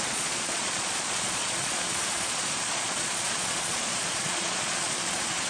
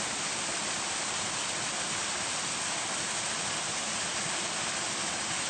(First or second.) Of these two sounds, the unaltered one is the second